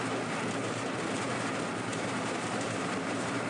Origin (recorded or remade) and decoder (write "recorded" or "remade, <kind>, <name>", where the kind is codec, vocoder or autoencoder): remade, vocoder, BigVGAN v2